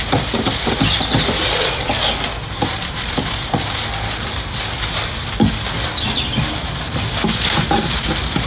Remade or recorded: recorded